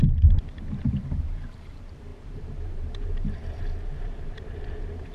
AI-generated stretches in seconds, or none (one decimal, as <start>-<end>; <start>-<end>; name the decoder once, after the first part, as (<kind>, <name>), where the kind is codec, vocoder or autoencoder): 0.0-5.1 (vocoder, BigVGAN v2)